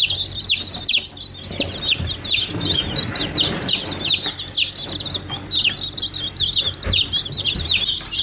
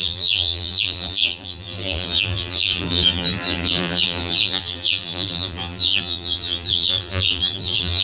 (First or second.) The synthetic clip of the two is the second